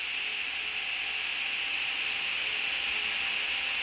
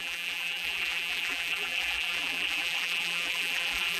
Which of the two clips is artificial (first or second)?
second